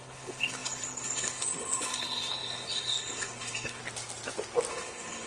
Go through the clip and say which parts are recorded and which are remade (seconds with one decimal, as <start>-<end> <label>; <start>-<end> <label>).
0.0-3.8 remade; 3.8-4.7 recorded; 4.7-5.3 remade